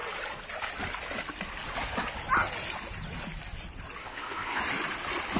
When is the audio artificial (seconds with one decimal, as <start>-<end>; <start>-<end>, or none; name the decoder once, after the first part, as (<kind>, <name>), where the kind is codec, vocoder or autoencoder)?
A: 4.0-4.6 (codec, ZipCodec)